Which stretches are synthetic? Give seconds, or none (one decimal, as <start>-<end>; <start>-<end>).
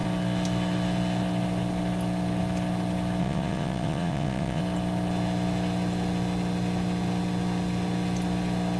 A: 3.2-4.6